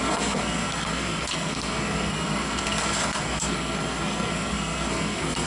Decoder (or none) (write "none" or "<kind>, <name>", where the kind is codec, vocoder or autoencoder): codec, SNAC